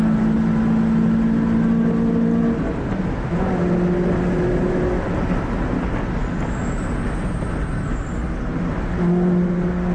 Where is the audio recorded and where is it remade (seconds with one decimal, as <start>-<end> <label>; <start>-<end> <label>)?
0.0-9.9 recorded